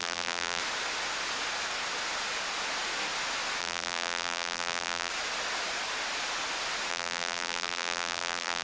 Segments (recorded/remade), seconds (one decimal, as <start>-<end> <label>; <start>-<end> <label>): 0.0-0.6 remade; 0.6-3.6 recorded; 3.6-5.1 remade; 5.1-6.9 recorded; 6.9-8.6 remade